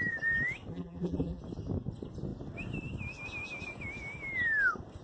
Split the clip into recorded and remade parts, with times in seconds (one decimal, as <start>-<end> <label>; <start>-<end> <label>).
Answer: 0.0-0.7 recorded; 0.7-1.4 remade; 1.4-5.0 recorded